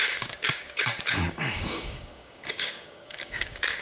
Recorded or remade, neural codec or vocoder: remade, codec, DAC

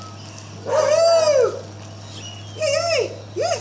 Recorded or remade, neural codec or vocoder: recorded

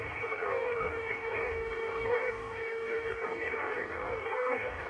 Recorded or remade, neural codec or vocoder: remade, codec, DAC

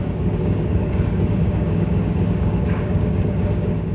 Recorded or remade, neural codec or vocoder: remade, codec, DAC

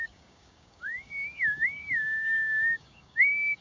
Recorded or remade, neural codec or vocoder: remade, codec, DAC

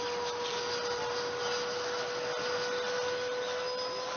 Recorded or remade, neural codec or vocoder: recorded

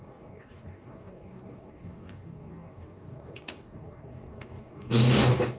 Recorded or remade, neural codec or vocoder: remade, codec, DAC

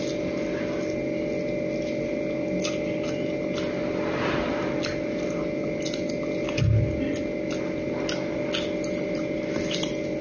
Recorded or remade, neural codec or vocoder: recorded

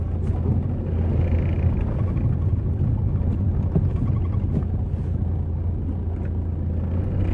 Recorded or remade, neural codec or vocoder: recorded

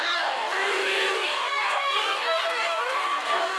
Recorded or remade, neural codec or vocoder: remade, codec, DAC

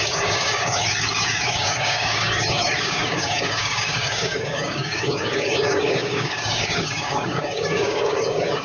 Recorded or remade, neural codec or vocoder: remade, codec, DAC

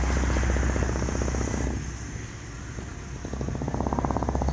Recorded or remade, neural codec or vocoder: recorded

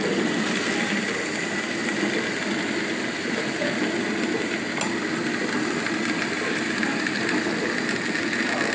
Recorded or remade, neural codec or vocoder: recorded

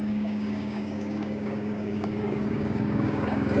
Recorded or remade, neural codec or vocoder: remade, codec, DAC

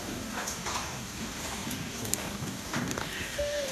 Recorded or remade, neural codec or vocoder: remade, codec, DAC